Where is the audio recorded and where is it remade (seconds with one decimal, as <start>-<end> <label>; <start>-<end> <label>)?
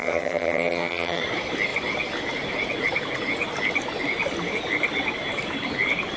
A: 0.0-1.2 remade; 1.2-6.2 recorded